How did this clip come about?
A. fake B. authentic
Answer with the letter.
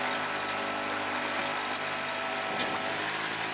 B